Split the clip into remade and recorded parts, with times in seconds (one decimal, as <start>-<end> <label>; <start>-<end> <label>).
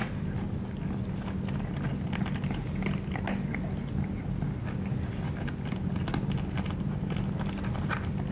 0.0-8.3 recorded